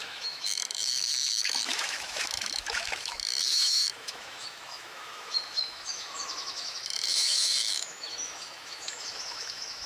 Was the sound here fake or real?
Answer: fake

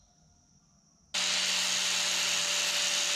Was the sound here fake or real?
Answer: real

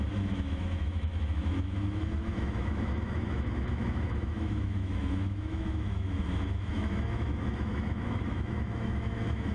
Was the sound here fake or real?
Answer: fake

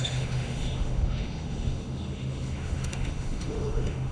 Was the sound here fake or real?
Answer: fake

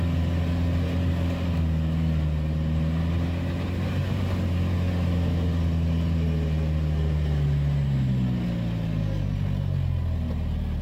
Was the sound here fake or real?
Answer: real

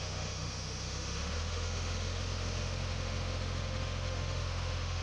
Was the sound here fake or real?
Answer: fake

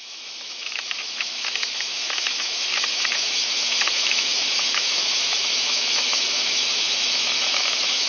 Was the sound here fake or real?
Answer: fake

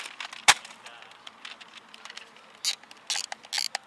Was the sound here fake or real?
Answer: real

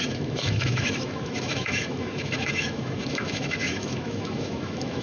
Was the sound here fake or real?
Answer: fake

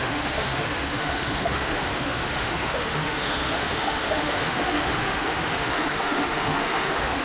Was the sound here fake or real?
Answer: fake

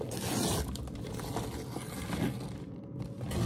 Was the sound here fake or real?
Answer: real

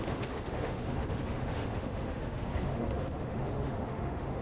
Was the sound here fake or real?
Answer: fake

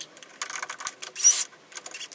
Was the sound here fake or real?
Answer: real